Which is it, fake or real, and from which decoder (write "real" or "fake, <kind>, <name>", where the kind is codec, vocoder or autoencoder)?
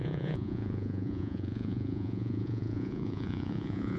fake, vocoder, Vocos